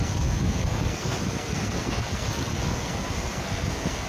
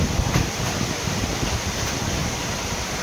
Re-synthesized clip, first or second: first